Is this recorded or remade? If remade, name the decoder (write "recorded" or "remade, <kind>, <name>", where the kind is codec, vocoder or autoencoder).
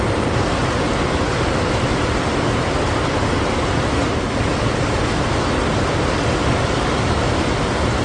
recorded